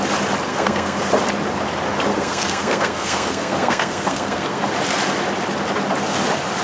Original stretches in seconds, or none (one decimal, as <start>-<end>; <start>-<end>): 0.0-0.5; 1.1-2.1; 4.6-6.6